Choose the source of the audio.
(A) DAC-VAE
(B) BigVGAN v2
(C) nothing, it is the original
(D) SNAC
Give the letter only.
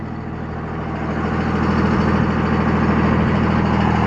C